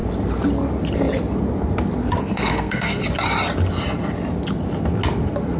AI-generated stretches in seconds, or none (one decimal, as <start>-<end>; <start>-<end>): 2.2-3.0